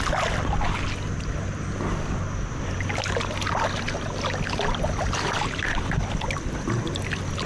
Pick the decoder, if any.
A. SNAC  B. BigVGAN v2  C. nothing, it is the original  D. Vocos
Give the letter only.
C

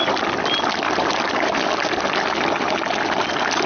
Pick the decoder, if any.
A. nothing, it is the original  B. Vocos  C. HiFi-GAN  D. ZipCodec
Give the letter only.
A